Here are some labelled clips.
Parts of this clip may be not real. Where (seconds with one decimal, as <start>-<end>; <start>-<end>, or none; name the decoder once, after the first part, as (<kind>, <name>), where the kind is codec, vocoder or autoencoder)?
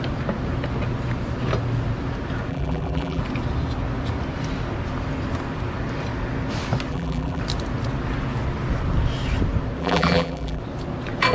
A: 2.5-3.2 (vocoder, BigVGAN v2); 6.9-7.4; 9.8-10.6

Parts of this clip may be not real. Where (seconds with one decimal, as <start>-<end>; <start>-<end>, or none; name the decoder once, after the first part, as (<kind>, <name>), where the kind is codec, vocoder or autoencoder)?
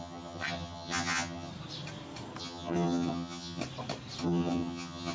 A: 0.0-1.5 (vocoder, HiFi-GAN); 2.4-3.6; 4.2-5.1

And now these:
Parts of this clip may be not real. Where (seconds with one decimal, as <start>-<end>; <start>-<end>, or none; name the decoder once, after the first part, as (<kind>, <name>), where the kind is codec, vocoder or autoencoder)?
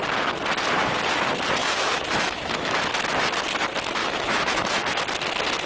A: 1.6-2.8 (autoencoder, DAC-VAE); 4.0-4.7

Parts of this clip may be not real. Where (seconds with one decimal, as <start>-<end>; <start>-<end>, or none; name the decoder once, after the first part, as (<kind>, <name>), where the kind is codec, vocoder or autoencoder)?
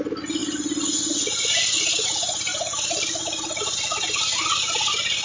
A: none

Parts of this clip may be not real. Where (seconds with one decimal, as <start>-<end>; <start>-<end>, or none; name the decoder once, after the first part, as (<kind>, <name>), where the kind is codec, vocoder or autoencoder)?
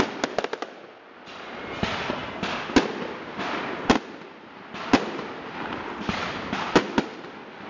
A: none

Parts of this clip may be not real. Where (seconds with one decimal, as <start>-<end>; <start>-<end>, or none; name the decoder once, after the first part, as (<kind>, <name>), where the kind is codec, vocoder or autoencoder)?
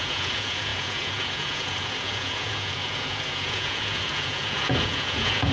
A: 0.0-5.5 (vocoder, Vocos)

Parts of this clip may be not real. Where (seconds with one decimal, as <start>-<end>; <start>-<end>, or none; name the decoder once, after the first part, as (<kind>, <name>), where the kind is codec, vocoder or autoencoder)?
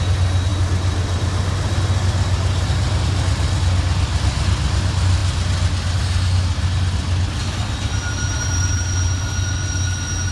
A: none